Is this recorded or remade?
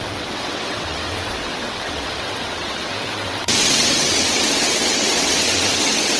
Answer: remade